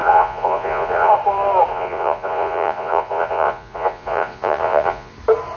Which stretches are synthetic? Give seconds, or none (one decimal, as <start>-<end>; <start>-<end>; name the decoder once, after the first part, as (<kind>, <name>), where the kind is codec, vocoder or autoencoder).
0.0-1.1 (vocoder, Vocos); 1.7-5.1